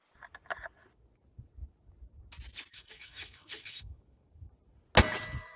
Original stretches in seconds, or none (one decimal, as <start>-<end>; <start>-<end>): 0.0-2.7; 4.3-5.6